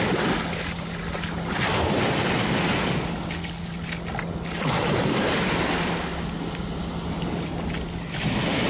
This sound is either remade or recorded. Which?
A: recorded